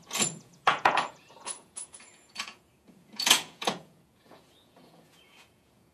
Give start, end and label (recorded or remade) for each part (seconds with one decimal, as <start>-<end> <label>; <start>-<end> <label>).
0.0-5.9 remade